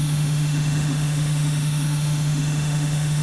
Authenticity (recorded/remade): remade